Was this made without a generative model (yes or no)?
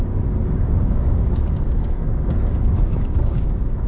no